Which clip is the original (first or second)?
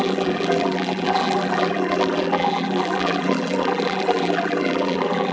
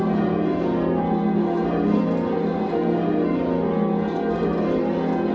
second